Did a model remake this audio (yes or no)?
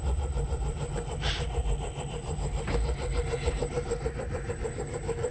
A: yes